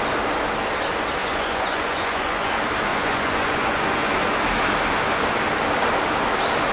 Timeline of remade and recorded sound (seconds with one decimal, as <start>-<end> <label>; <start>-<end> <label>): 0.0-1.2 recorded; 1.2-2.5 remade; 2.5-2.9 recorded; 2.9-4.1 remade; 4.1-6.7 recorded